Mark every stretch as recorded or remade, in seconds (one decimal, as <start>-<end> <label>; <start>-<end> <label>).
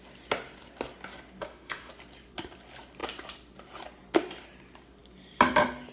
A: 0.0-1.4 recorded; 1.4-1.9 remade; 1.9-5.9 recorded